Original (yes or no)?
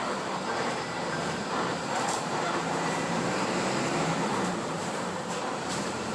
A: no